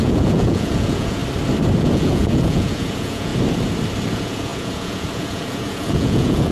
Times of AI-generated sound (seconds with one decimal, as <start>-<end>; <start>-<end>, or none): 0.0-1.2; 1.8-3.3; 4.1-6.5